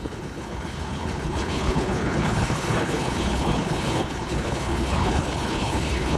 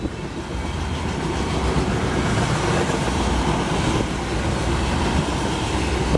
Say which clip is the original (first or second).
second